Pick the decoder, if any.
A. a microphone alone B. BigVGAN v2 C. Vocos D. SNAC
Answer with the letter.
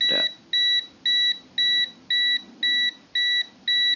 A